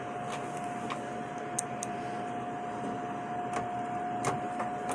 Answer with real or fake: real